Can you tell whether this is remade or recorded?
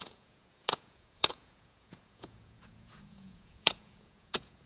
remade